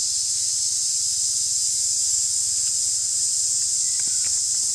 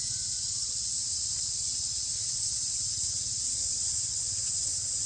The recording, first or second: first